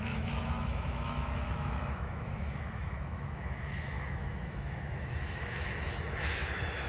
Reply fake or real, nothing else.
fake